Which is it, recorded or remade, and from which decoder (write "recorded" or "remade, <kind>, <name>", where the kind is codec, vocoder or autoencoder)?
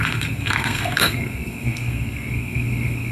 remade, codec, SNAC